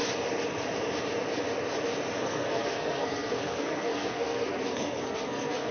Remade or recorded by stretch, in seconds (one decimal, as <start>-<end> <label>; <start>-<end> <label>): 0.0-2.2 recorded; 2.2-5.7 remade